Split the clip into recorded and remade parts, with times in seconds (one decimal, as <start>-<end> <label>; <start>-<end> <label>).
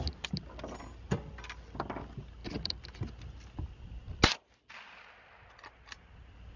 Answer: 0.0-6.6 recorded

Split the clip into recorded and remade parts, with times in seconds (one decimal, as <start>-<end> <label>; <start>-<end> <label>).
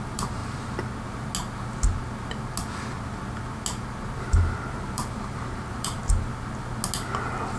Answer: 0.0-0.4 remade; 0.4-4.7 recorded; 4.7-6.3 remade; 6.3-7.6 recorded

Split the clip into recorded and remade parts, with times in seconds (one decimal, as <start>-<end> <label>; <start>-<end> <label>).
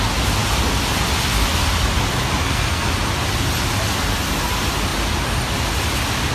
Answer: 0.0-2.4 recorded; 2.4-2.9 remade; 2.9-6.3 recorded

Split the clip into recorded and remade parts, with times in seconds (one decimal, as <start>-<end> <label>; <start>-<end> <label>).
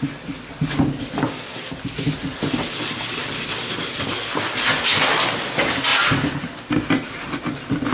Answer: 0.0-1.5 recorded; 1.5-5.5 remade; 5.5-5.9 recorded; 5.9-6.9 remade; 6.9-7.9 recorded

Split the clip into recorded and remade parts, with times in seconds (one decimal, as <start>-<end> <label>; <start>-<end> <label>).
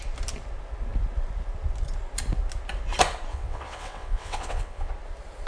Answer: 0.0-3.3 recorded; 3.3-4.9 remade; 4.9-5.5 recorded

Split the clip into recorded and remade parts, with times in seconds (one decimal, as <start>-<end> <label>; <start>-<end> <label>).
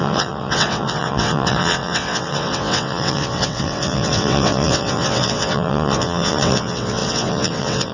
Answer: 0.0-7.9 remade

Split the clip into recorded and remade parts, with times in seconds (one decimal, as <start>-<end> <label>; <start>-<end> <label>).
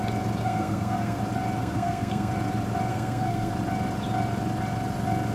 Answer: 0.0-0.4 recorded; 0.4-1.2 remade; 1.2-1.6 recorded; 1.6-2.3 remade; 2.3-2.9 recorded; 2.9-3.5 remade; 3.5-5.3 recorded